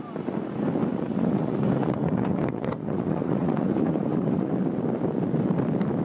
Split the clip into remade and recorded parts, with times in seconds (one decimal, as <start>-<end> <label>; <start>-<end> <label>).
0.0-0.9 recorded; 0.9-4.5 remade; 4.5-6.0 recorded